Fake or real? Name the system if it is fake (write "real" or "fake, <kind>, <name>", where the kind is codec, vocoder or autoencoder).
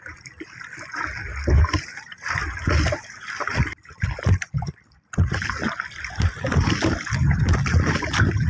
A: real